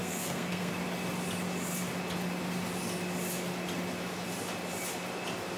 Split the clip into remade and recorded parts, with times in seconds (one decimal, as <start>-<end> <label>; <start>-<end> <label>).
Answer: 0.0-0.7 remade; 0.7-5.6 recorded